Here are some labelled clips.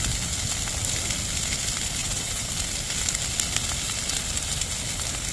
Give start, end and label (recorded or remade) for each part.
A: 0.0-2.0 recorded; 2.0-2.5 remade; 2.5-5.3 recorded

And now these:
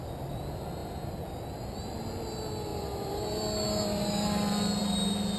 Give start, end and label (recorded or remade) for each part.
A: 0.0-2.7 recorded; 2.7-3.4 remade; 3.4-5.4 recorded

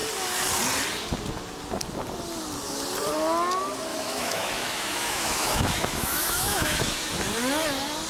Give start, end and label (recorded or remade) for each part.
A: 0.0-3.9 recorded; 3.9-7.1 remade; 7.1-8.1 recorded

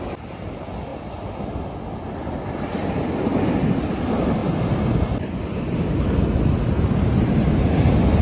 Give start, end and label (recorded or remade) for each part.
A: 0.0-8.2 recorded

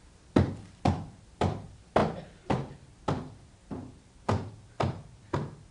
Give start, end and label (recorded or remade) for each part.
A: 0.0-5.7 recorded

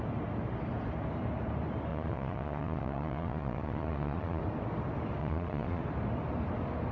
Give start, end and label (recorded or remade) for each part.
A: 0.0-1.9 recorded; 1.9-4.4 remade; 4.4-5.2 recorded; 5.2-5.8 remade; 5.8-6.9 recorded

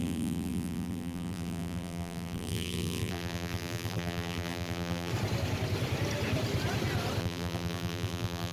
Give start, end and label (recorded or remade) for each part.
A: 0.0-5.1 remade; 5.1-7.2 recorded; 7.2-8.5 remade